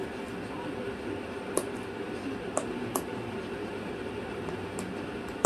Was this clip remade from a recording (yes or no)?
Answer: no